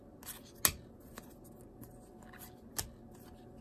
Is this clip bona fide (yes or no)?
yes